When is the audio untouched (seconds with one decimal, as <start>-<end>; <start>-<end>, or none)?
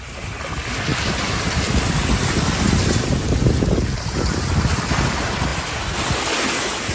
0.0-6.9